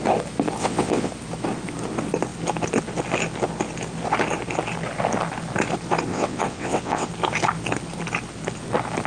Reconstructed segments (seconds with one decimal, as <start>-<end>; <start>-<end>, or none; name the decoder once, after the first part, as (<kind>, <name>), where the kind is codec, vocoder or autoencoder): 0.6-1.1 (vocoder, WaveNeXt); 6.1-7.1